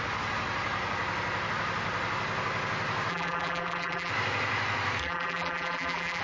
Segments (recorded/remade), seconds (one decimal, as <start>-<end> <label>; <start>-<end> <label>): 0.0-3.1 recorded; 3.1-4.1 remade; 4.1-5.0 recorded; 5.0-6.2 remade